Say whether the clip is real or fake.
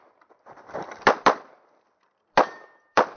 fake